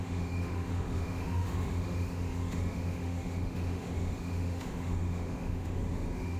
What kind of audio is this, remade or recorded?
remade